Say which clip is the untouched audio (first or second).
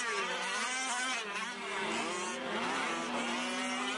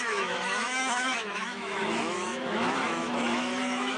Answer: first